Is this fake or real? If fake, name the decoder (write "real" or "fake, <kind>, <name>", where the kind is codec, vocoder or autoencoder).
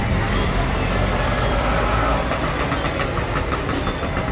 real